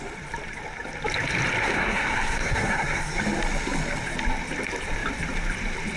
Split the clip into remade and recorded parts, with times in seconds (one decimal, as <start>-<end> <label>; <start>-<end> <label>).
0.0-1.6 recorded; 1.6-3.2 remade; 3.2-6.0 recorded